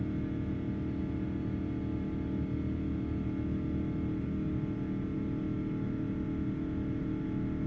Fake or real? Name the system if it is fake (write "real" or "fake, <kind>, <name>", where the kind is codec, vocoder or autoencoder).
real